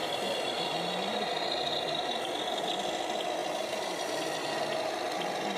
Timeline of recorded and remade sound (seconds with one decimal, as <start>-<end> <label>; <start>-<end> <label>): 0.0-2.4 remade; 2.4-3.4 recorded; 3.4-5.0 remade; 5.0-5.6 recorded